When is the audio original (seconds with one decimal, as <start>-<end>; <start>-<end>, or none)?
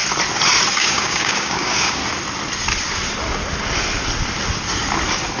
0.0-0.8; 2.0-5.4